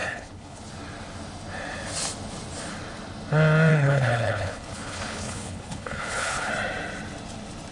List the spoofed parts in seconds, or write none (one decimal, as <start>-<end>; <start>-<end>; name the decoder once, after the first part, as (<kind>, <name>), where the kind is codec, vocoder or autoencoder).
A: 0.0-0.6 (codec, HILCodec); 3.7-6.5